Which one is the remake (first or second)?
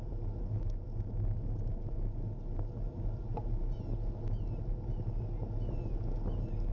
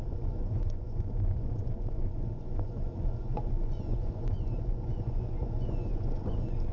second